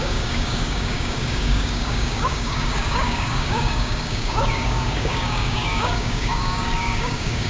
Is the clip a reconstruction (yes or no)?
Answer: yes